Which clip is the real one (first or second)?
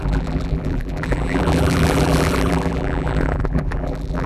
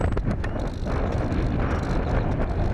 second